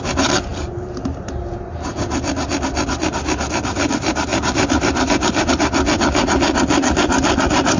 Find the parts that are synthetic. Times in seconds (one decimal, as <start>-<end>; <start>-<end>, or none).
0.5-2.3; 4.3-5.5